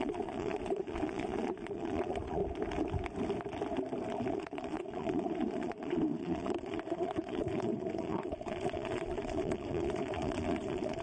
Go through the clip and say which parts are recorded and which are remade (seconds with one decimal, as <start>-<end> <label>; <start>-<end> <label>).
0.0-2.4 remade; 2.4-4.3 recorded; 4.3-11.0 remade